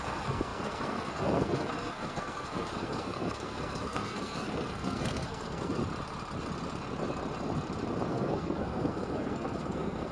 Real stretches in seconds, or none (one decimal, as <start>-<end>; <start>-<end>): 5.8-8.1